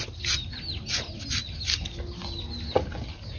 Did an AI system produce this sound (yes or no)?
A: no